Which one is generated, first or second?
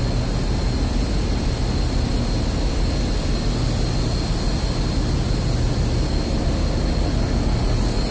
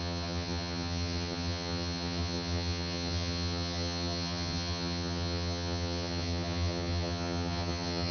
second